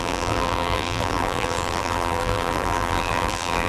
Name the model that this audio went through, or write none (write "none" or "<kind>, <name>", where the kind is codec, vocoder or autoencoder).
vocoder, BigVGAN v2